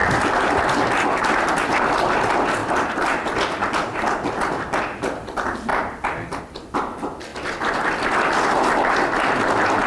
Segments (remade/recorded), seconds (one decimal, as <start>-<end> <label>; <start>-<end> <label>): 0.0-2.6 recorded; 2.6-4.8 remade; 4.8-5.7 recorded; 5.7-6.4 remade; 6.4-7.3 recorded; 7.3-8.1 remade; 8.1-9.9 recorded